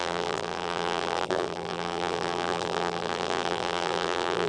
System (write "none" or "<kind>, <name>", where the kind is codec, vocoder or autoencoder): vocoder, BigVGAN v2